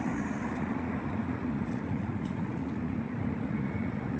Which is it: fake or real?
fake